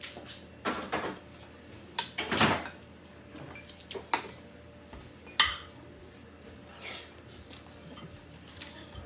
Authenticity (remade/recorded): recorded